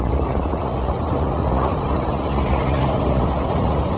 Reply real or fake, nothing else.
fake